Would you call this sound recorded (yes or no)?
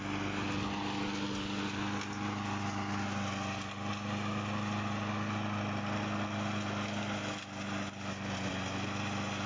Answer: yes